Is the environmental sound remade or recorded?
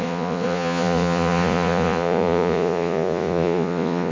remade